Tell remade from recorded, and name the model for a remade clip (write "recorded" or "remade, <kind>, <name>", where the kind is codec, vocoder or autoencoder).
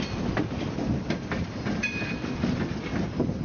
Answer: recorded